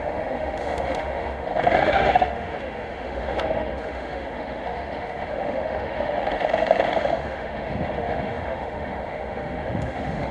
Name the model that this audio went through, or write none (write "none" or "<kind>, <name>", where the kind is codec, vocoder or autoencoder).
autoencoder, DAC-VAE